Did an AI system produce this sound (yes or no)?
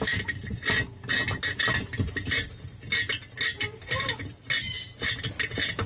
no